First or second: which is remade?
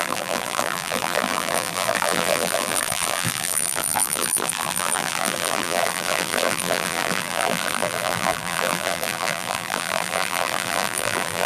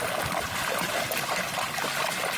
first